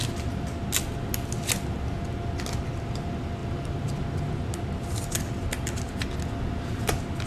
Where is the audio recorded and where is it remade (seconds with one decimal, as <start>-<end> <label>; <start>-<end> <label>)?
0.0-7.3 recorded